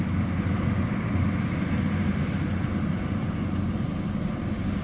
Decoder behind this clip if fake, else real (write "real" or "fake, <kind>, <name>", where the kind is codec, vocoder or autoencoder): real